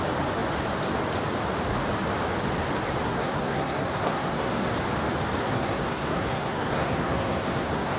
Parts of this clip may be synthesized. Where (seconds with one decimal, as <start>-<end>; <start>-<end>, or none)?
3.0-4.7; 5.4-8.0